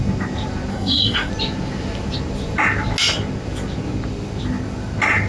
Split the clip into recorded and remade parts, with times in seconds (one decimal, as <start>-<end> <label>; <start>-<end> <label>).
0.0-0.7 recorded; 0.7-1.3 remade; 1.3-5.3 recorded